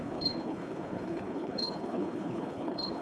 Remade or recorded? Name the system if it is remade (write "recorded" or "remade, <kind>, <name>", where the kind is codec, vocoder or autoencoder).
remade, codec, HILCodec